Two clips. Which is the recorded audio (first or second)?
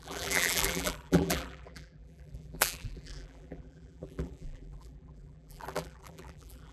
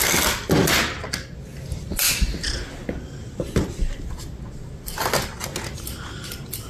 second